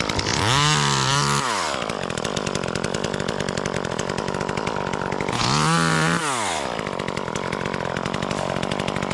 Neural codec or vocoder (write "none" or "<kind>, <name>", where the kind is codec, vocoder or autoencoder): none